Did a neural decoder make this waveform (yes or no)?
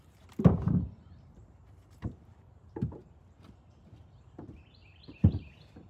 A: yes